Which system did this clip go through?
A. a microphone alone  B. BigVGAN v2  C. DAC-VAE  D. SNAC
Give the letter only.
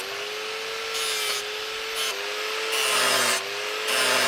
A